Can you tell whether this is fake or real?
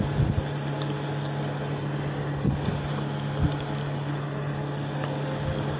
real